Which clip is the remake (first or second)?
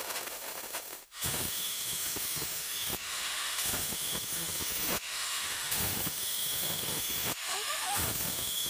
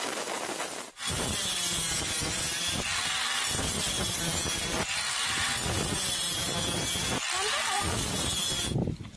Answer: first